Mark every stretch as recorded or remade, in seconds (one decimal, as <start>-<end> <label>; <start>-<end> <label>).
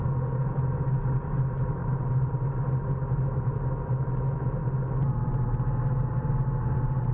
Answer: 0.0-1.8 recorded; 1.8-2.5 remade; 2.5-7.1 recorded